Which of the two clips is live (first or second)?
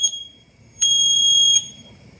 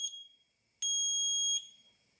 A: second